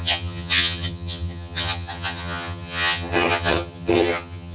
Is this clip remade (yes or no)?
yes